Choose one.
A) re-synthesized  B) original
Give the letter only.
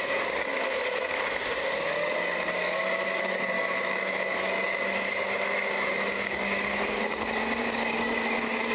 A